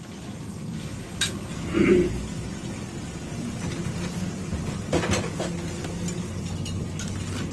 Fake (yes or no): no